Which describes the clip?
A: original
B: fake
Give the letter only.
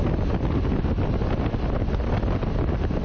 A